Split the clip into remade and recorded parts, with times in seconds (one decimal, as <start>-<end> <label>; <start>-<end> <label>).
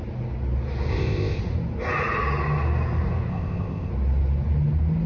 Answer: 0.0-0.9 recorded; 0.9-1.4 remade; 1.4-3.3 recorded; 3.3-3.9 remade; 3.9-5.1 recorded